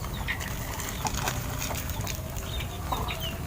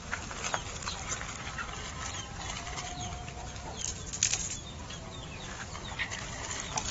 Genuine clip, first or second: first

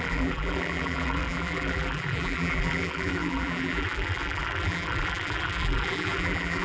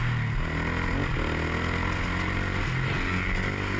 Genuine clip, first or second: second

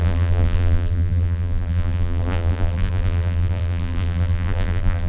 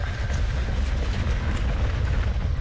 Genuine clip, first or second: second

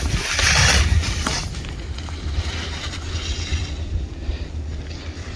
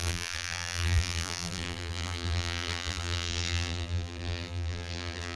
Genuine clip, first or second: first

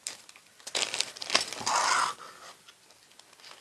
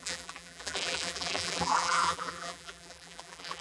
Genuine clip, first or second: first